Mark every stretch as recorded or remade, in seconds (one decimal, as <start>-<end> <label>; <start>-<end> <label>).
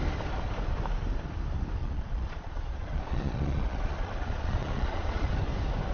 0.0-1.8 recorded; 1.8-5.3 remade; 5.3-5.9 recorded